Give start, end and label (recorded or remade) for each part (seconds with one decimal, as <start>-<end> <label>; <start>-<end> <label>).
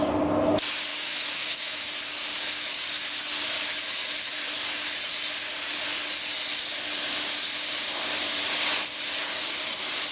0.0-0.9 recorded; 0.9-1.8 remade; 1.8-10.1 recorded